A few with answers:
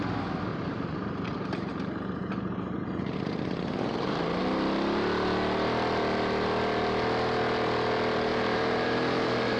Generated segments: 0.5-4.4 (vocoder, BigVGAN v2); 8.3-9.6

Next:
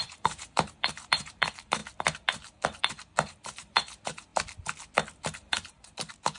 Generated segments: 0.0-1.8 (vocoder, BigVGAN v2); 2.8-4.3; 5.2-6.4

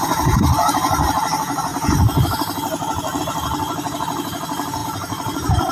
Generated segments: 0.0-1.7 (vocoder, BigVGAN v2); 3.2-5.7

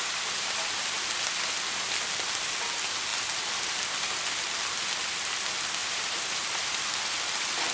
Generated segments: 0.0-0.8 (vocoder, BigVGAN v2); 5.8-6.9